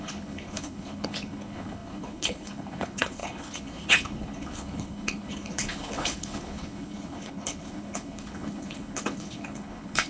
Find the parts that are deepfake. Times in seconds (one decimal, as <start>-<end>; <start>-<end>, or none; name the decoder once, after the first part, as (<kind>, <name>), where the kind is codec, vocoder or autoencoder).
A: 0.0-10.1 (codec, HILCodec)